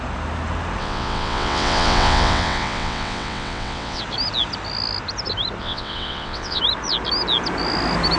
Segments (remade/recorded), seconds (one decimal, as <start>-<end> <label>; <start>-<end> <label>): 0.0-0.8 recorded; 0.8-4.0 remade; 4.0-5.6 recorded; 5.6-6.6 remade; 6.6-8.2 recorded